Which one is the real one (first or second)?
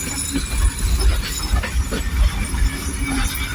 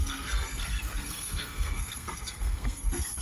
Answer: first